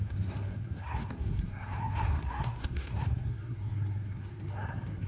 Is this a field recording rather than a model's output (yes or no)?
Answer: no